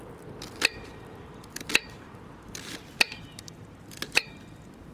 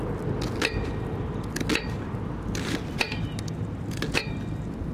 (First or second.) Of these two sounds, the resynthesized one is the first